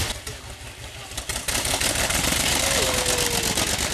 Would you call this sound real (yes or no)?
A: yes